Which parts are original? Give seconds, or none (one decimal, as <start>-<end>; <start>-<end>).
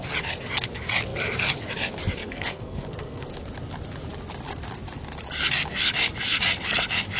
0.0-2.2; 3.3-7.2